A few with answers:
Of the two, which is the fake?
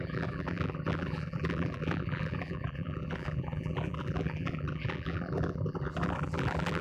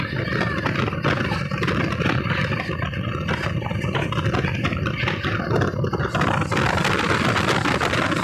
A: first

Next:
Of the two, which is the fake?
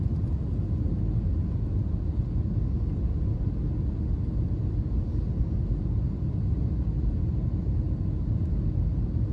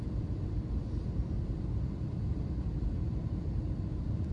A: second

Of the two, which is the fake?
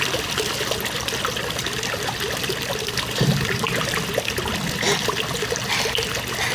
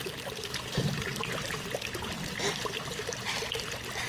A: second